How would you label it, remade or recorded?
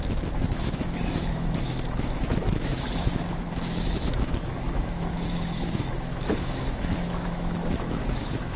remade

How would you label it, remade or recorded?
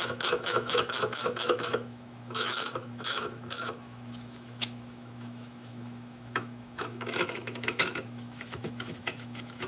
remade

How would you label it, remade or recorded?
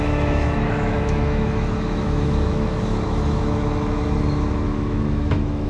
remade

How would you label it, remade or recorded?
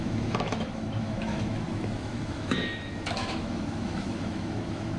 remade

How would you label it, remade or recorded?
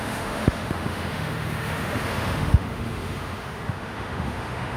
remade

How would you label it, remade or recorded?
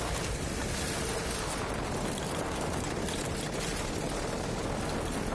recorded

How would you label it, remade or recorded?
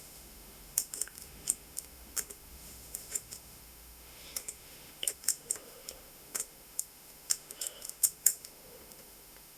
remade